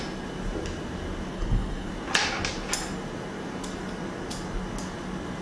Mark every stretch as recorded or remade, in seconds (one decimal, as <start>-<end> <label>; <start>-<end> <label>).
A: 0.0-1.3 recorded; 1.3-1.9 remade; 1.9-5.4 recorded